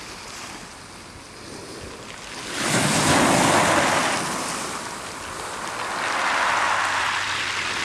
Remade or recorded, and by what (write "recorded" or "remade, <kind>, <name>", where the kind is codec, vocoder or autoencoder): recorded